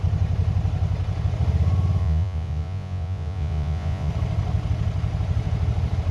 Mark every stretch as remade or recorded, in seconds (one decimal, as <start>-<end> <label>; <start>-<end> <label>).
0.0-2.0 recorded; 2.0-4.1 remade; 4.1-6.1 recorded